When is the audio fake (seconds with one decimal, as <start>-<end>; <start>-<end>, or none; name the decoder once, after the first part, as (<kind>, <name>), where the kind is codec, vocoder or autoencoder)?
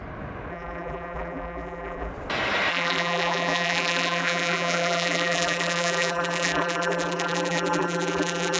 0.5-2.1 (vocoder, BigVGAN v2); 2.7-8.6